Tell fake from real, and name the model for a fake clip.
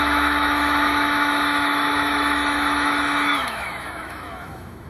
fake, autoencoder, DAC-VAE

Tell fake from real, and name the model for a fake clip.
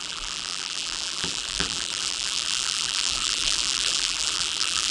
fake, vocoder, BigVGAN v2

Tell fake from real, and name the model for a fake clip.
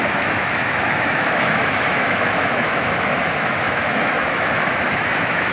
fake, autoencoder, DAC-VAE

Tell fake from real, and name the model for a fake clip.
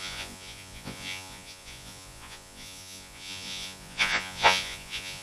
fake, vocoder, Vocos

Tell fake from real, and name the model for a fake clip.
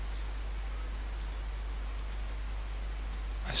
real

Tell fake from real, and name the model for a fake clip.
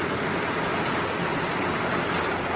real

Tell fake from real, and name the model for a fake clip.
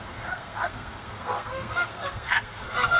fake, codec, SNAC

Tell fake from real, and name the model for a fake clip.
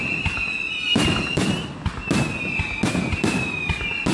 real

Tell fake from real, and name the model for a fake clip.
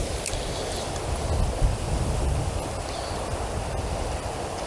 real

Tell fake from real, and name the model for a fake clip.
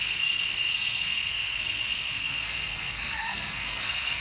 fake, codec, SNAC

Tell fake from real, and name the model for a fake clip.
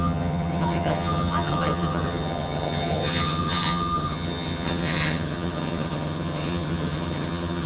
fake, vocoder, HiFi-GAN